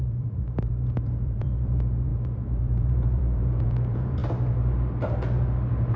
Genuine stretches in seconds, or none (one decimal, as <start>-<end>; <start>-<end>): 4.2-6.0